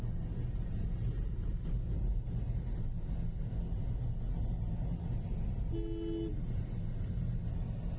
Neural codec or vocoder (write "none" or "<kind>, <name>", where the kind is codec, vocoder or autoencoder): none